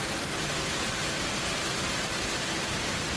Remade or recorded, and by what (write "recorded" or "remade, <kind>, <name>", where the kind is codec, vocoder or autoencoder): recorded